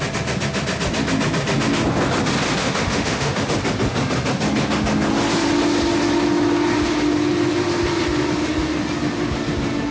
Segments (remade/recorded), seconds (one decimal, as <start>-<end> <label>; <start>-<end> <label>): 0.0-2.6 recorded; 2.6-3.4 remade; 3.4-9.9 recorded